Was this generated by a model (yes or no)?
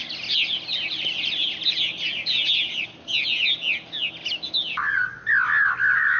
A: no